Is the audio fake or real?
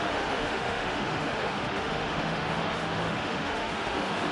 fake